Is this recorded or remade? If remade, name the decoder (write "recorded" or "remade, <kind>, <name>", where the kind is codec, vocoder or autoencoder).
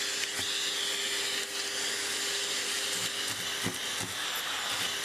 recorded